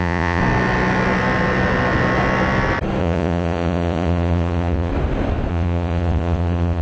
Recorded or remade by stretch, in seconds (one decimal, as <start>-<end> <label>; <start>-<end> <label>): 0.0-0.4 remade; 0.4-3.0 recorded; 3.0-4.9 remade; 4.9-5.5 recorded; 5.5-6.8 remade